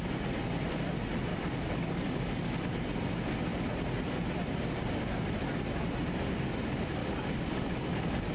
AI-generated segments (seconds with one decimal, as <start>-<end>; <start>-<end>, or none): 1.3-2.5; 7.0-8.3